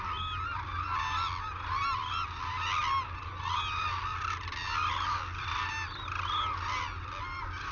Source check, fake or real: real